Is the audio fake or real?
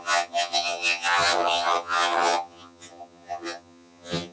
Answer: fake